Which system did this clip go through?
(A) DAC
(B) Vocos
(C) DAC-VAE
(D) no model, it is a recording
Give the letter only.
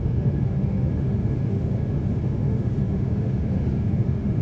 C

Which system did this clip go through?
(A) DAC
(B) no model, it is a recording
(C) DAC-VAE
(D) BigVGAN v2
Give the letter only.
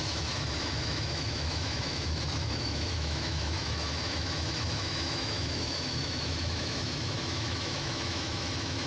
C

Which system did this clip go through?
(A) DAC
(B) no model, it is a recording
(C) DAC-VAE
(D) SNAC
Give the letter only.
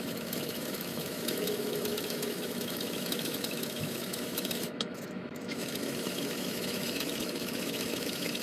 C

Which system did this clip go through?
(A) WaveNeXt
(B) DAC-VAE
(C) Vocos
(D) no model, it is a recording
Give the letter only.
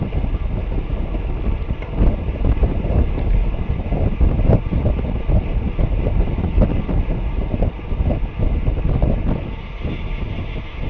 D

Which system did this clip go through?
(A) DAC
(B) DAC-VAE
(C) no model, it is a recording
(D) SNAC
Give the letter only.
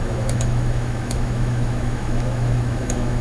B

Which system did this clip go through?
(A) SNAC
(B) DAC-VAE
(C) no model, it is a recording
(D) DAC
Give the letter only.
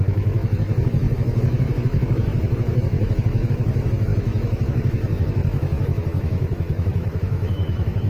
B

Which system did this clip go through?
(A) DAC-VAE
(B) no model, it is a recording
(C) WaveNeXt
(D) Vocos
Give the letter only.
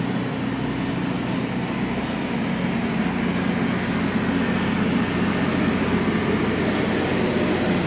B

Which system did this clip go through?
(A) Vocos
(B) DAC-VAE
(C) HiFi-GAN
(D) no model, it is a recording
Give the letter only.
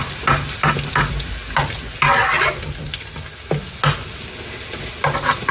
D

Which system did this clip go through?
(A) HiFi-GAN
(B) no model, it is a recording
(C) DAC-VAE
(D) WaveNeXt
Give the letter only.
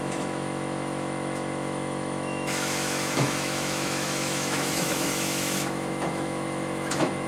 C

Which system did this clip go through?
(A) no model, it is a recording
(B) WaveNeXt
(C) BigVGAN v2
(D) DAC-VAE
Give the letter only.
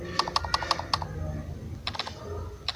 A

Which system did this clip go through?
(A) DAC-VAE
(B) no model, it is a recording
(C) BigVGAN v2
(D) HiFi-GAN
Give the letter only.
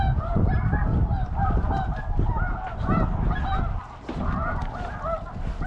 B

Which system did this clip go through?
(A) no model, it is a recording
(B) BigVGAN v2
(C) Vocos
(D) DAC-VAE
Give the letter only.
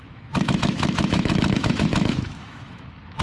D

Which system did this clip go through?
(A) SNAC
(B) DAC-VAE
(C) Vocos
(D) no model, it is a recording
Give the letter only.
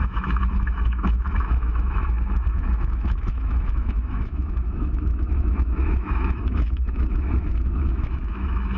B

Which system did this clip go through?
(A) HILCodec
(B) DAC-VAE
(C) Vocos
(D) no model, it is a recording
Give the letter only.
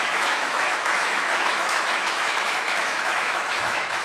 B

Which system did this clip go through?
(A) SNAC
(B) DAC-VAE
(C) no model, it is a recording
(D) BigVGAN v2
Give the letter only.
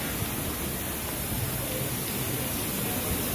C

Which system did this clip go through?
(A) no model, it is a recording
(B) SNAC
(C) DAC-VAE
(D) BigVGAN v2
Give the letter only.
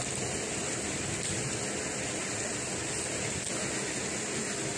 A